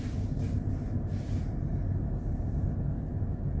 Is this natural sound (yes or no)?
yes